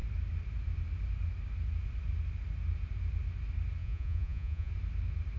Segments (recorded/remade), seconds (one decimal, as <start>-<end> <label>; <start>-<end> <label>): 0.0-3.8 recorded; 3.8-4.7 remade; 4.7-5.4 recorded